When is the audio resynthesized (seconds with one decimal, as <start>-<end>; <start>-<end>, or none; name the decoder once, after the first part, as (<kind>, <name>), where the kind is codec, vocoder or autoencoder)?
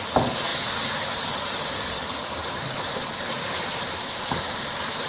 2.4-5.1 (vocoder, BigVGAN v2)